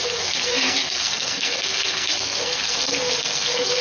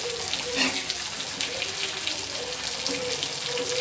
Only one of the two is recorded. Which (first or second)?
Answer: second